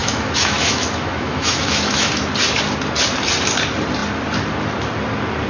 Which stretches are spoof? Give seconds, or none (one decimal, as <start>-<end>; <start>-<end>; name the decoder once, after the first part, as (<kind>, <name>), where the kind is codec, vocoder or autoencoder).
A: 0.0-2.1 (autoencoder, DAC-VAE)